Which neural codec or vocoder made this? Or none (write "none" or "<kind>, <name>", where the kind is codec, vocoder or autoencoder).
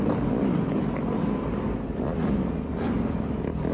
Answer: none